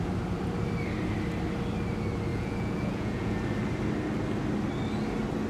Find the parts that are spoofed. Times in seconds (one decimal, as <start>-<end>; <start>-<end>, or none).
2.3-3.4